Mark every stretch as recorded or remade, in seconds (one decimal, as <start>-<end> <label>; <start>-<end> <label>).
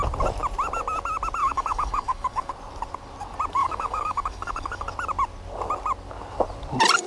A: 0.0-1.4 recorded; 1.4-2.5 remade; 2.5-3.6 recorded; 3.6-4.9 remade; 4.9-7.1 recorded